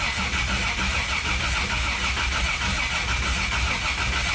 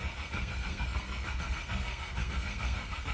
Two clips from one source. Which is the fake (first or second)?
second